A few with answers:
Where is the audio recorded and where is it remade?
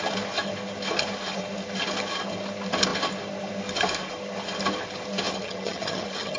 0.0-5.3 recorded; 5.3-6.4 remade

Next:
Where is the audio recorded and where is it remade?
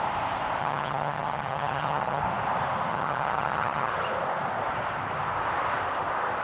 0.0-0.6 recorded; 0.6-2.2 remade; 2.2-2.9 recorded; 2.9-3.9 remade; 3.9-6.4 recorded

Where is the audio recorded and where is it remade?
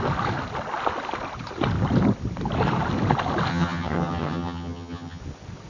0.0-3.5 recorded; 3.5-5.2 remade; 5.2-5.7 recorded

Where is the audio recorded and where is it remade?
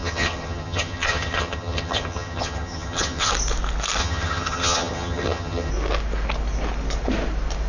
0.0-3.3 remade; 3.3-4.0 recorded; 4.0-5.7 remade; 5.7-7.7 recorded